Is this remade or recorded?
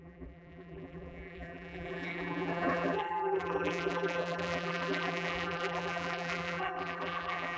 remade